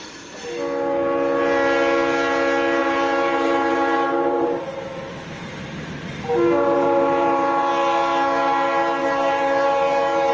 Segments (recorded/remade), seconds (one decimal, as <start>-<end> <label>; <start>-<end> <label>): 0.0-2.8 recorded; 2.8-7.7 remade; 7.7-9.0 recorded; 9.0-10.3 remade